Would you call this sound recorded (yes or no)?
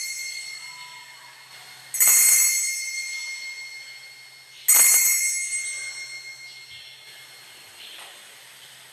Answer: yes